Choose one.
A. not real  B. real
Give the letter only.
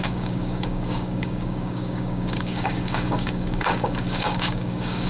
A